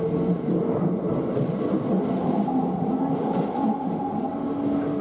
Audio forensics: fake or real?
real